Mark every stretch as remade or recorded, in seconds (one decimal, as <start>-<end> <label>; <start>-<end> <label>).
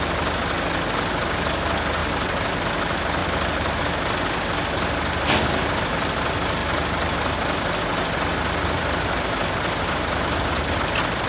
0.0-2.0 recorded; 2.0-2.6 remade; 2.6-3.2 recorded; 3.2-3.8 remade; 3.8-11.3 recorded